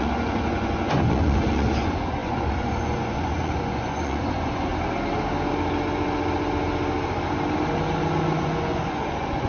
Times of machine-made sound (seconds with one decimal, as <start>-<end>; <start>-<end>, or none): 0.0-4.7; 8.4-9.5